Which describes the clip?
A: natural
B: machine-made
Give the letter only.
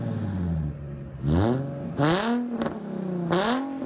A